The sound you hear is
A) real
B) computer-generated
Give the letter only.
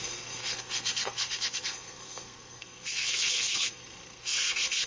B